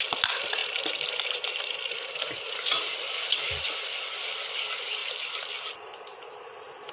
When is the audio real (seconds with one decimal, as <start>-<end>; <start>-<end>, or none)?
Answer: 0.0-0.6; 3.7-5.0